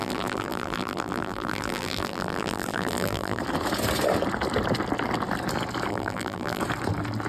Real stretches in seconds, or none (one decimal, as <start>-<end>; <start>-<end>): 3.4-5.9; 6.6-7.3